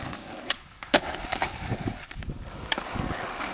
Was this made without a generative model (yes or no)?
no